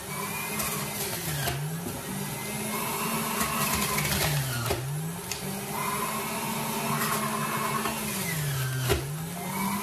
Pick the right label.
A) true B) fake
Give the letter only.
A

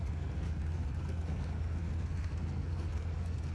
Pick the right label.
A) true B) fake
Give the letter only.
B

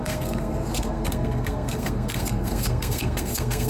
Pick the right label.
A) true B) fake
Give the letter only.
B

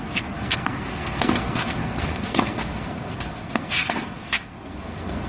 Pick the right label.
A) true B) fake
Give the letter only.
B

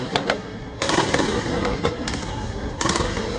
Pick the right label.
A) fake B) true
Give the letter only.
A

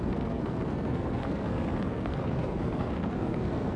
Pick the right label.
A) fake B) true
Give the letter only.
A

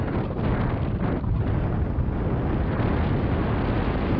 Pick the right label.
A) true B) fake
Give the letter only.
A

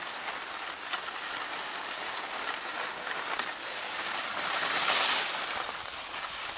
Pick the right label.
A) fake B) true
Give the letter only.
B